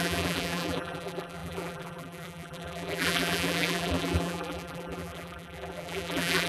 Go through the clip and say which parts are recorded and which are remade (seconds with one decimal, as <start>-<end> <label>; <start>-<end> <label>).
0.0-6.5 remade